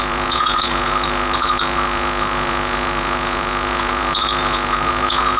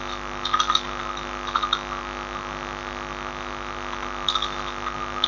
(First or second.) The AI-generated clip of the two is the first